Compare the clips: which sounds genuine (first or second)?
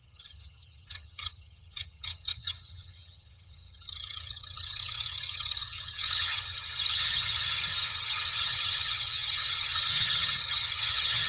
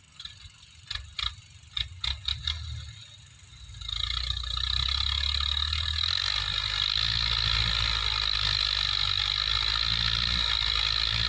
second